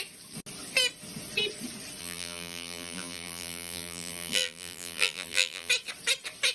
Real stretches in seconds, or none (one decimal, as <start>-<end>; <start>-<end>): 0.0-2.0; 5.7-6.5